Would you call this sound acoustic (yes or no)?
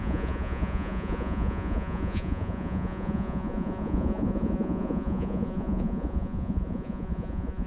no